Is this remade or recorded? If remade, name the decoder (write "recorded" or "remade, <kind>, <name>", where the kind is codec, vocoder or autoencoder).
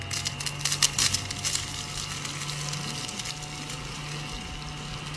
recorded